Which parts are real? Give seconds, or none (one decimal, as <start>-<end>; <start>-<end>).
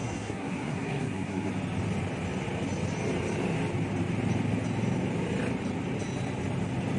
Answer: 1.5-7.0